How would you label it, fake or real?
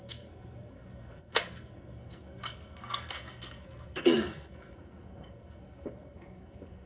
fake